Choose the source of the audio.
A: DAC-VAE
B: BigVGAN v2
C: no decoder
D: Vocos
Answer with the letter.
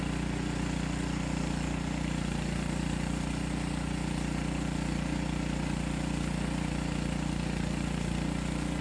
C